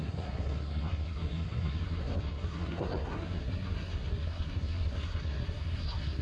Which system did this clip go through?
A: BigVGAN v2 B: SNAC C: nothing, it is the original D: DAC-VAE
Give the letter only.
B